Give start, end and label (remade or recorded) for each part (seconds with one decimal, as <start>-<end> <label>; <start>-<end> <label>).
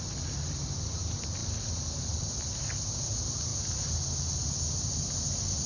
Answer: 0.0-5.7 recorded